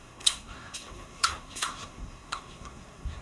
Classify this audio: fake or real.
fake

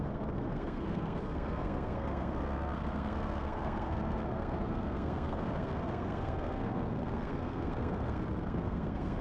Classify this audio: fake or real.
fake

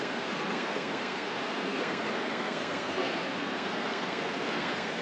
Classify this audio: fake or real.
fake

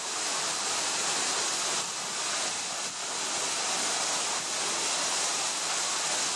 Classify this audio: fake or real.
real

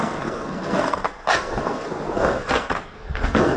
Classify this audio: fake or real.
fake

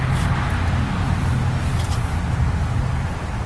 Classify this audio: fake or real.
real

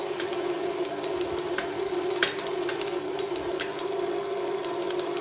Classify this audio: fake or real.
real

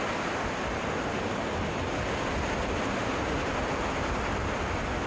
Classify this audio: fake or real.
real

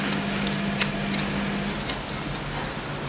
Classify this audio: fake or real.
real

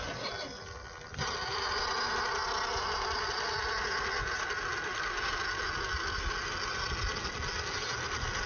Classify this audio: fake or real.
real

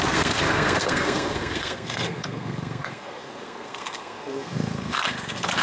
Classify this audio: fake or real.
fake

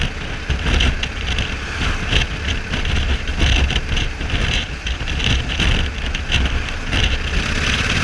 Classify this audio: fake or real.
real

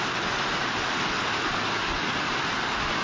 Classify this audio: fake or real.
real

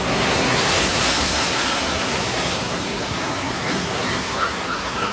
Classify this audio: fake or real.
fake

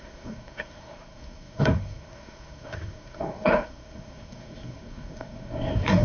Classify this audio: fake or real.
fake